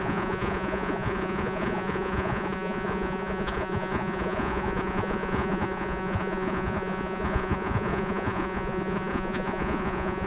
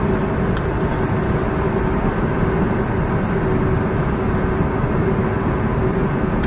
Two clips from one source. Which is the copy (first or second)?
first